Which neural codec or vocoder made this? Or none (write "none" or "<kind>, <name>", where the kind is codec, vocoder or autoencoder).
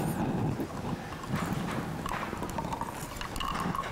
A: none